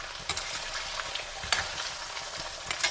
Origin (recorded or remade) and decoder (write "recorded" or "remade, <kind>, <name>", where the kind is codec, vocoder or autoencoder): recorded